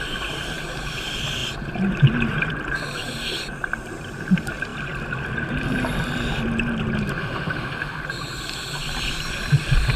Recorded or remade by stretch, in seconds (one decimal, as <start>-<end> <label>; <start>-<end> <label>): 0.0-7.2 recorded; 7.2-8.0 remade; 8.0-10.0 recorded